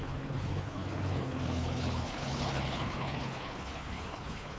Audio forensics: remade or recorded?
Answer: remade